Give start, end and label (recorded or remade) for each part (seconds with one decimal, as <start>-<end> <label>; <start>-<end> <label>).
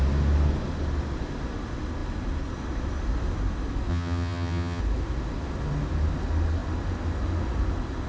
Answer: 0.0-3.9 recorded; 3.9-4.8 remade; 4.8-8.1 recorded